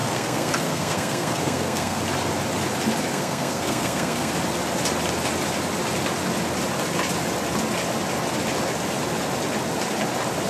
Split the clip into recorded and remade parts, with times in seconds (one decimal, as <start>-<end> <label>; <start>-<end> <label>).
0.0-2.0 remade; 2.0-3.1 recorded; 3.1-4.3 remade; 4.3-10.5 recorded